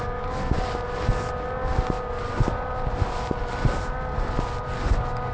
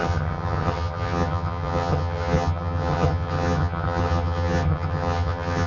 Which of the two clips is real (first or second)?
first